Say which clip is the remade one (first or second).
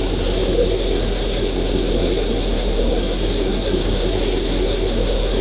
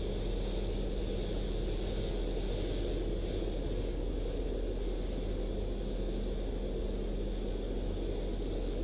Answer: first